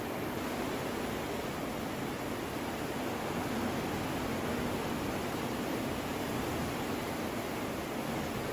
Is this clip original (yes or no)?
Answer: yes